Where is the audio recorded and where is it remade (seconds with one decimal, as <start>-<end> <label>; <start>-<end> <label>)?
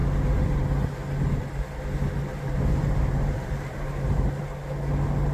0.0-2.3 recorded; 2.3-4.4 remade; 4.4-5.3 recorded